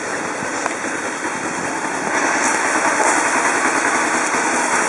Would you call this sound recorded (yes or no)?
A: yes